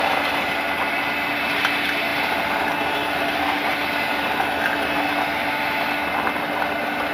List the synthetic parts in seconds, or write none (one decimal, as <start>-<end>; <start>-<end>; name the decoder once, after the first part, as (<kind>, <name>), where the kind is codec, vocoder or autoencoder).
2.1-2.6 (vocoder, BigVGAN v2); 3.0-3.7